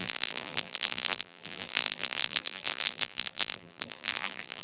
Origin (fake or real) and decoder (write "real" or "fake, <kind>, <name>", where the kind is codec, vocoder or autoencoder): fake, vocoder, BigVGAN v2